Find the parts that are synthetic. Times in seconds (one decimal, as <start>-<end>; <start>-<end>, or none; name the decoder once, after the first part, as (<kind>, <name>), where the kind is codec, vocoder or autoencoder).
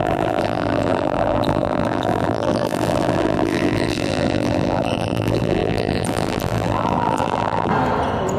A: 0.0-7.7 (vocoder, BigVGAN v2)